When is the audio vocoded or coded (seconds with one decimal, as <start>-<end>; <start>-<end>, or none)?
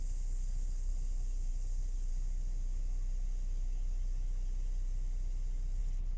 0.0-0.9; 1.5-2.1; 5.8-6.2